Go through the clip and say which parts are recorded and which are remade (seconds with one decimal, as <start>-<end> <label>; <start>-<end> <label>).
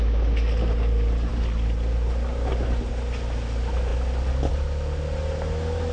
0.0-5.9 recorded